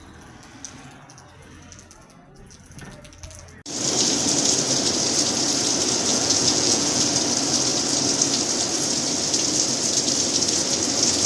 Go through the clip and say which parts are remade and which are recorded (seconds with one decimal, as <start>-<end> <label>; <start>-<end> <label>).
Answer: 0.0-6.1 recorded; 6.1-7.0 remade; 7.0-11.3 recorded